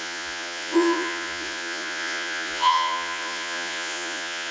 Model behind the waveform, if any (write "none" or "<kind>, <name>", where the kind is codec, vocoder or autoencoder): vocoder, Vocos